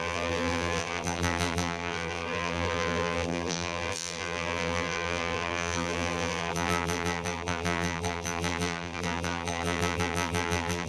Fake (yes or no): yes